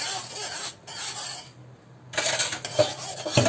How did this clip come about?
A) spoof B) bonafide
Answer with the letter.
B